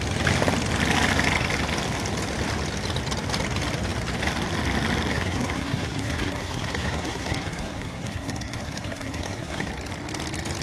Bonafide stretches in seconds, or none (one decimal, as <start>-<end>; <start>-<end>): 0.0-5.1; 9.7-10.6